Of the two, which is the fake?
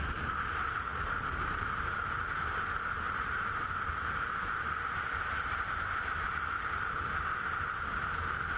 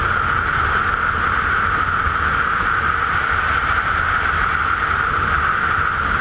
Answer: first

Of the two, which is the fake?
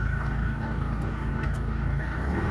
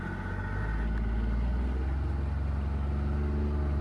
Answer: first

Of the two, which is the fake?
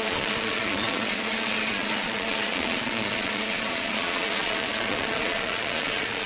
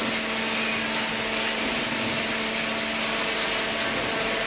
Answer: first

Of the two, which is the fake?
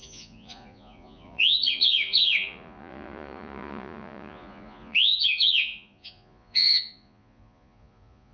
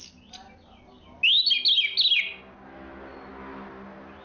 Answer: first